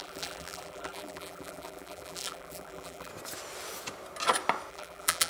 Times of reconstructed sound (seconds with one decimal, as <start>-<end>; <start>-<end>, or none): 0.0-3.1; 4.7-5.3